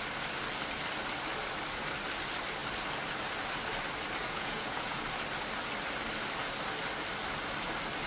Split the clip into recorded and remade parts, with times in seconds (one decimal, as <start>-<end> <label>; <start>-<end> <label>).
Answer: 0.0-4.2 recorded; 4.2-5.0 remade; 5.0-8.1 recorded

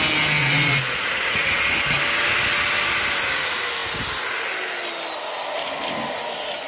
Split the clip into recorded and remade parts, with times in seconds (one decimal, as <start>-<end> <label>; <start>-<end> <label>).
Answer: 0.0-0.4 recorded; 0.4-1.6 remade; 1.6-6.7 recorded

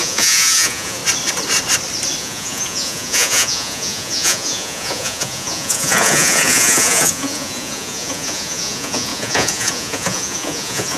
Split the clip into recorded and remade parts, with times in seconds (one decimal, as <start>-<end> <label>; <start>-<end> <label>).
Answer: 0.0-1.0 remade; 1.0-2.2 recorded; 2.2-11.0 remade

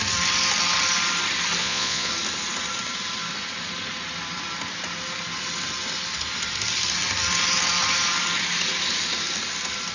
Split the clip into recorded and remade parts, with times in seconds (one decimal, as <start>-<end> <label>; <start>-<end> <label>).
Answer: 0.0-1.6 recorded; 1.6-2.1 remade; 2.1-9.9 recorded

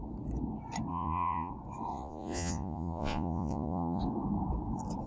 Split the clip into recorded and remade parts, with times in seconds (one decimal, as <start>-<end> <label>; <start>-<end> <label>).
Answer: 0.0-0.9 recorded; 0.9-1.5 remade; 1.5-1.9 recorded; 1.9-4.0 remade; 4.0-5.1 recorded